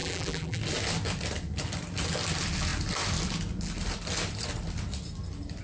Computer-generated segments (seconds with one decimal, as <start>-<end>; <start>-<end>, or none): 0.0-0.6